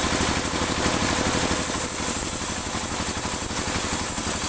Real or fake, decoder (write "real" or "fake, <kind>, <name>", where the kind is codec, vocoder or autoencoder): real